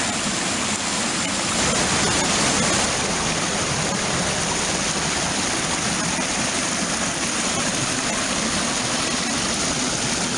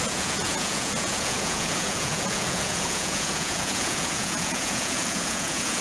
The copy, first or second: second